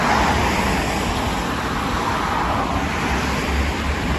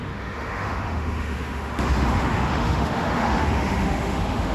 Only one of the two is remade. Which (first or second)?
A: second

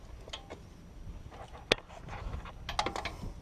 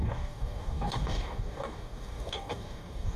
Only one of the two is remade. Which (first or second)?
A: second